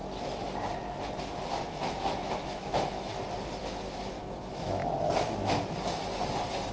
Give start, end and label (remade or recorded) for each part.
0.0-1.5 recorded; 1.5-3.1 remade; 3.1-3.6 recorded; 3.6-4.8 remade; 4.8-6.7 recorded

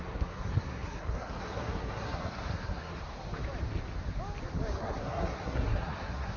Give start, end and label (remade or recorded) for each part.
0.0-3.0 remade; 3.0-4.8 recorded; 4.8-6.4 remade

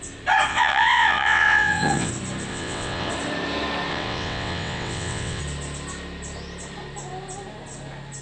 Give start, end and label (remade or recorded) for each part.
0.0-0.5 recorded; 0.5-2.1 remade; 2.1-2.5 recorded; 2.5-3.1 remade; 3.1-3.9 recorded; 3.9-5.4 remade; 5.4-8.2 recorded

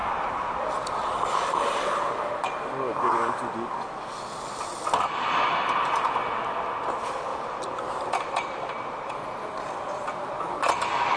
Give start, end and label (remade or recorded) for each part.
0.0-0.6 remade; 0.6-7.3 recorded; 7.3-9.1 remade; 9.1-11.2 recorded

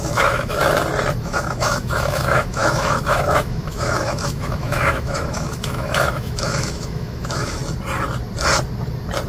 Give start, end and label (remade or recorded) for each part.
0.0-0.6 remade; 0.6-1.2 recorded; 1.2-7.6 remade; 7.6-9.3 recorded

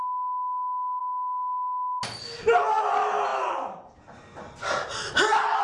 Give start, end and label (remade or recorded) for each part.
0.0-1.0 recorded; 1.0-2.0 remade; 2.0-5.6 recorded

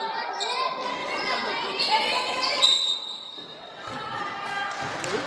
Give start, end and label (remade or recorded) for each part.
0.0-1.0 recorded; 1.0-4.2 remade; 4.2-5.3 recorded

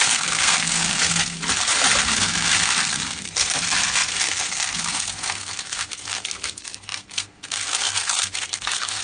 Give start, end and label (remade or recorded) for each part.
0.0-1.4 remade; 1.4-2.0 recorded; 2.0-9.0 remade